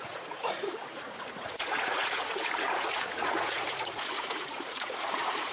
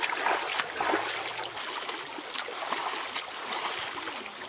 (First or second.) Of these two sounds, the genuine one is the second